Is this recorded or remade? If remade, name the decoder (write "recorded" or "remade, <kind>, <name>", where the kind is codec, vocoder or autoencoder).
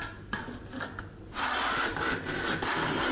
recorded